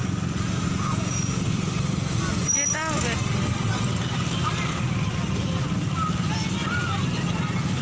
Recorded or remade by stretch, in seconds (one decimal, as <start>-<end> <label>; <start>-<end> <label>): 0.0-7.8 recorded